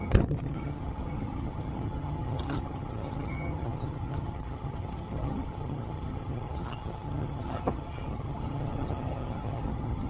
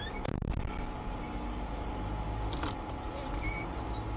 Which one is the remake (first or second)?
first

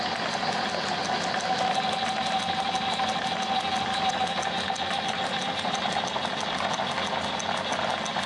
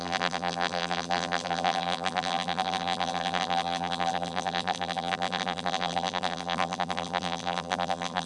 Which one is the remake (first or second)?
second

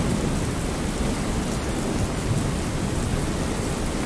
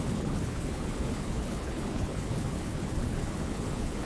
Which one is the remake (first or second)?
second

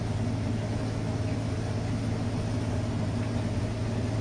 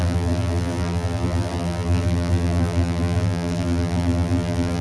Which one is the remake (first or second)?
second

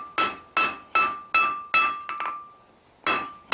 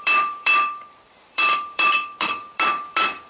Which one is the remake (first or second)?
second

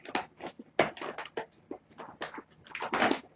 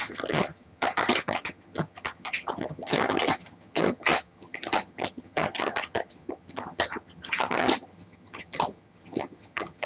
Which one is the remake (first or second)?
second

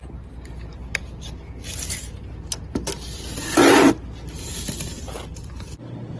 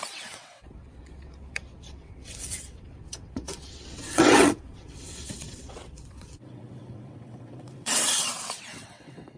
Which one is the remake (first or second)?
second